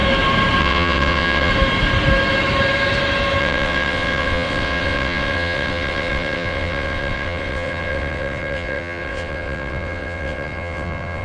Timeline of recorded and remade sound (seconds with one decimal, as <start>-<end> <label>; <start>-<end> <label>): 0.0-0.6 recorded; 0.6-1.5 remade; 1.5-3.4 recorded; 3.4-11.2 remade